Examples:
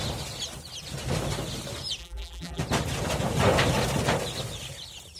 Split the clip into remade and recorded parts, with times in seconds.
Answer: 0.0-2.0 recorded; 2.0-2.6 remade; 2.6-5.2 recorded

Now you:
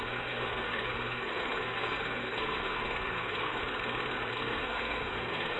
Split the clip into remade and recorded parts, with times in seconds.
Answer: 0.0-3.6 remade; 3.6-4.3 recorded; 4.3-5.6 remade

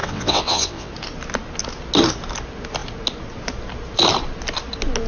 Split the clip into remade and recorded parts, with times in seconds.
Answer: 0.0-0.9 remade; 0.9-5.1 recorded

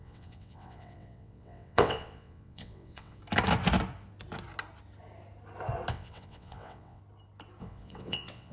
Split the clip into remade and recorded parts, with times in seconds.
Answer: 0.0-3.2 remade; 3.2-5.9 recorded; 5.9-7.0 remade; 7.0-7.6 recorded; 7.6-8.5 remade

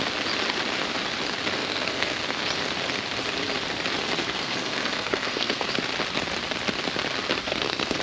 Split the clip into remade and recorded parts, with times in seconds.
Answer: 0.0-1.6 recorded; 1.6-2.2 remade; 2.2-4.2 recorded; 4.2-5.7 remade; 5.7-7.4 recorded; 7.4-8.0 remade

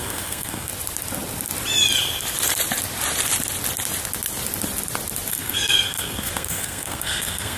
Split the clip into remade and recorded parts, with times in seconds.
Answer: 0.0-0.7 remade; 0.7-5.3 recorded; 5.3-7.6 remade

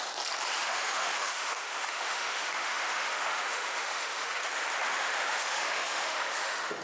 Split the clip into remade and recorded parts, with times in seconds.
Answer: 0.0-0.6 recorded; 0.6-4.4 remade; 4.4-4.9 recorded; 4.9-6.8 remade

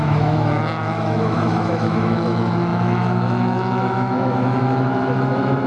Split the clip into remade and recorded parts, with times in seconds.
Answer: 0.0-5.7 remade